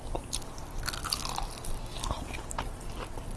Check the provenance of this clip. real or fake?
real